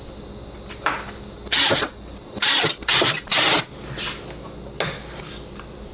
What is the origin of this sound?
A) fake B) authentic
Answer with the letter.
B